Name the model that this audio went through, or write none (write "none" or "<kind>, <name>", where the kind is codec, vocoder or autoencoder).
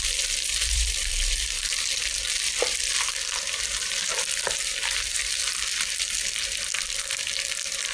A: vocoder, BigVGAN v2